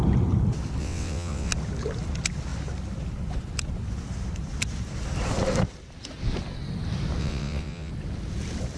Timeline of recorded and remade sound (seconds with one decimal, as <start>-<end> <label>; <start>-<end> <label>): 0.0-0.8 recorded; 0.8-1.5 remade; 1.5-7.2 recorded; 7.2-7.9 remade; 7.9-8.8 recorded